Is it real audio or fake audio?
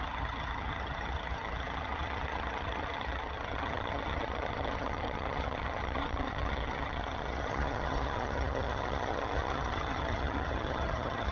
fake